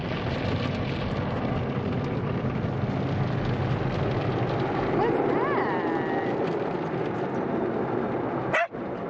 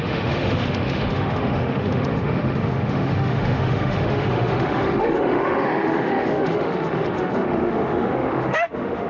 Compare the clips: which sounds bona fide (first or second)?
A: first